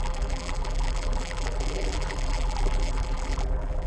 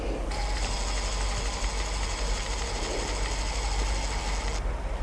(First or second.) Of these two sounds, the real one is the second